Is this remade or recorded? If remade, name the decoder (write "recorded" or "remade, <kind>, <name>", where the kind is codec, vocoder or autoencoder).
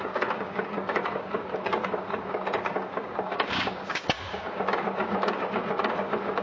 remade, codec, DAC